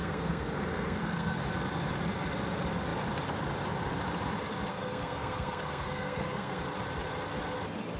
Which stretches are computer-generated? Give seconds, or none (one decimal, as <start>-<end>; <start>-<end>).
0.0-1.4; 4.7-6.6